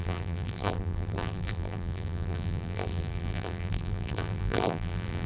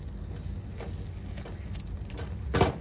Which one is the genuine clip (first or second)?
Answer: second